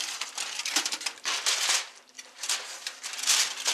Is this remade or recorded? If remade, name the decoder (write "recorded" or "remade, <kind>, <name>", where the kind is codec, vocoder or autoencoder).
remade, vocoder, BigVGAN v2